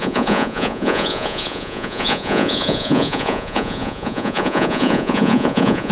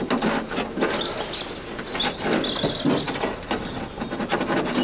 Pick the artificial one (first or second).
first